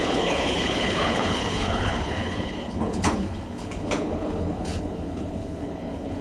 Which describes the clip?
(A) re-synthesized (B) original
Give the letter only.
A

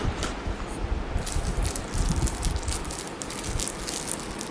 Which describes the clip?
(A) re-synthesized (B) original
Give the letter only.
B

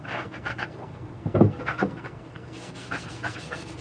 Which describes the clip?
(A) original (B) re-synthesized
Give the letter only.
B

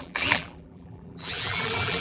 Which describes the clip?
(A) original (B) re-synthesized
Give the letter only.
B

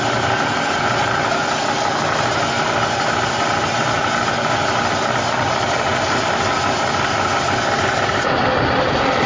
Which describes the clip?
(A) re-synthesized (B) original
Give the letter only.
B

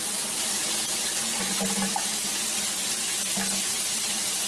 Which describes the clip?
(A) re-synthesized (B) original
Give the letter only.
B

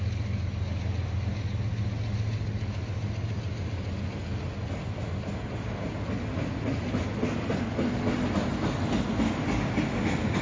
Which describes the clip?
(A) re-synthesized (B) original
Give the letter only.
B